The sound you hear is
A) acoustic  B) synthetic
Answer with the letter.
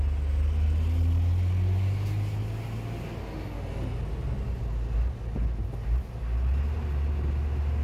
A